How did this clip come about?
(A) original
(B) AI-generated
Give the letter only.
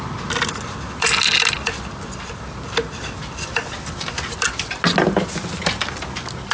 A